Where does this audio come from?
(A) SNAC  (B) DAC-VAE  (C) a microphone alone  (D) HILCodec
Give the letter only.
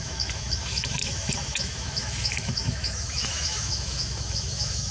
B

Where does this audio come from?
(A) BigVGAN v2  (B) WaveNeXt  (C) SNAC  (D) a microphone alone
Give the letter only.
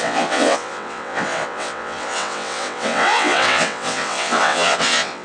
B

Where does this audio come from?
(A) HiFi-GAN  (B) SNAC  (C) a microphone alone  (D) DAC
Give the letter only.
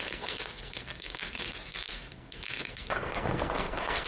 B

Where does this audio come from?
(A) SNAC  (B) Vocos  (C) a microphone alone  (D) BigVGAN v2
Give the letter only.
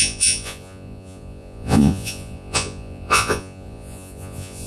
B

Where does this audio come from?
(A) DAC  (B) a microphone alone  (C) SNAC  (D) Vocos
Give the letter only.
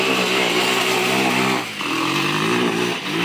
B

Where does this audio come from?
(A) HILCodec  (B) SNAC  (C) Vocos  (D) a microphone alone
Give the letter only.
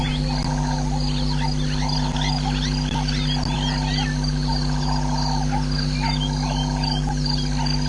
D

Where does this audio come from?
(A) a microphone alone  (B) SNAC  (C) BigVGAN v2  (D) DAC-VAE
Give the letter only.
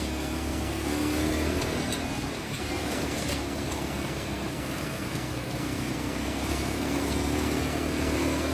B